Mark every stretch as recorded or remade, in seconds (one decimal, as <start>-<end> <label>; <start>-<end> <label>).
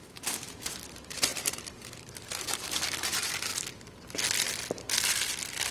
0.0-3.5 remade; 3.5-5.7 recorded